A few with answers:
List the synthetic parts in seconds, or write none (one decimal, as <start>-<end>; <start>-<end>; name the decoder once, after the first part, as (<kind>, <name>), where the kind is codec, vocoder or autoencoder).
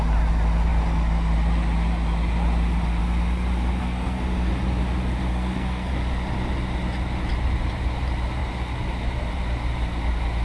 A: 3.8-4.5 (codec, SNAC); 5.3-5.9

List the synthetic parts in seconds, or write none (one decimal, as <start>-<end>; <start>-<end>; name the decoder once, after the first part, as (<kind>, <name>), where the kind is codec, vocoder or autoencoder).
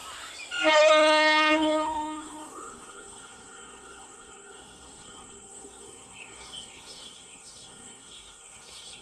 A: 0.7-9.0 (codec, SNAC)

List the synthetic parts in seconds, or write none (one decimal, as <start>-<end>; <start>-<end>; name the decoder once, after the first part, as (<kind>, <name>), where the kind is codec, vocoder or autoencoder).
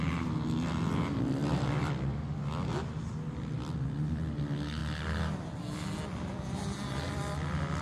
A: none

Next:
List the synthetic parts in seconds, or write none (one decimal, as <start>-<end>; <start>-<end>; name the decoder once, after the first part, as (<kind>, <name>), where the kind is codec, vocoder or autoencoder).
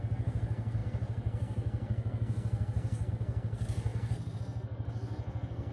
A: 0.0-5.7 (codec, SNAC)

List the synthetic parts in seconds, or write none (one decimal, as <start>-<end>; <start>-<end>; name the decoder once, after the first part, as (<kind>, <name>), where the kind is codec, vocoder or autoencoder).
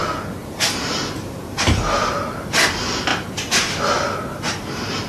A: none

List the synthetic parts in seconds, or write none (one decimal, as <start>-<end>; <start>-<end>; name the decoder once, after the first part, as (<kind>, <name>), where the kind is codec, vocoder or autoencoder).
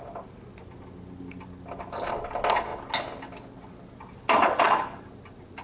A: none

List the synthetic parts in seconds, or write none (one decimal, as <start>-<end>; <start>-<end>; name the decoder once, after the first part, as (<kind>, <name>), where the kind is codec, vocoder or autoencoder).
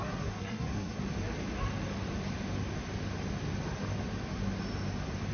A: 0.0-1.0 (codec, SNAC)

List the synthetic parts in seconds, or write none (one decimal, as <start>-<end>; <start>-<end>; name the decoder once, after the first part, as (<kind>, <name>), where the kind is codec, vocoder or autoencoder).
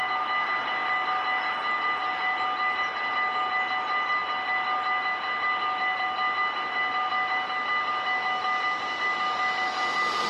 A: none